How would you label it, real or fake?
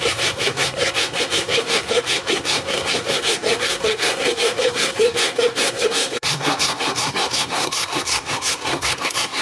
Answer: fake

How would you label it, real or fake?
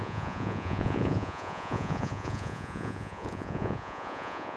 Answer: fake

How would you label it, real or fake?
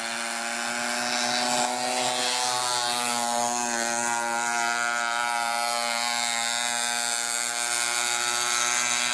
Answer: real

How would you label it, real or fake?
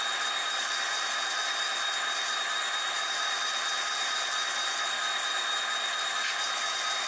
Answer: real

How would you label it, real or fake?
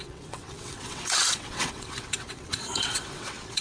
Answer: fake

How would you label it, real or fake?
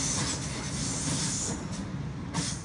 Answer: real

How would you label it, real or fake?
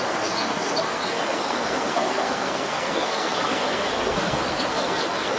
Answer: fake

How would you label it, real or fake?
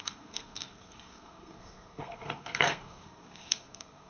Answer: fake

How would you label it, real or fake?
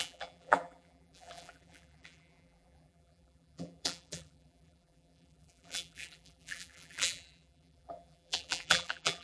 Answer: fake